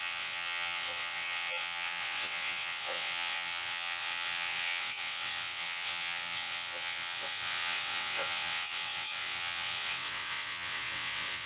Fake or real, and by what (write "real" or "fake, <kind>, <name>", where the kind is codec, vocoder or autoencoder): fake, vocoder, WaveNeXt